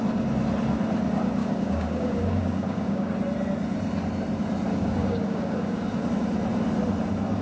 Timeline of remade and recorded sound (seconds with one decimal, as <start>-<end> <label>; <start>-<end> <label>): 0.0-1.4 recorded; 1.4-3.1 remade; 3.1-4.7 recorded; 4.7-6.1 remade; 6.1-7.4 recorded